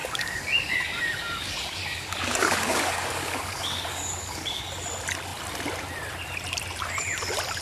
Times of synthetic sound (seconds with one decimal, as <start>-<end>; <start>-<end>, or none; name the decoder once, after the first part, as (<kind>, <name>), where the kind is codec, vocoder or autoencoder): 0.0-4.6 (codec, DAC)